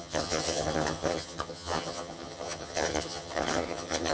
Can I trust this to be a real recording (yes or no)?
no